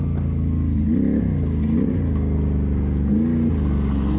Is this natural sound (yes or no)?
yes